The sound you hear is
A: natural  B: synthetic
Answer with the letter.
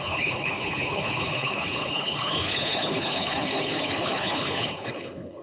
B